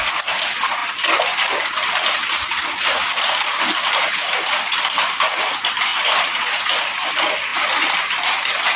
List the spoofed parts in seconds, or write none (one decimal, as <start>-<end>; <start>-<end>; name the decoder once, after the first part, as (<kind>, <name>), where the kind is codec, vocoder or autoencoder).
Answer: none